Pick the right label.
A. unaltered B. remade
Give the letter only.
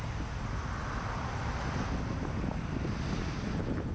A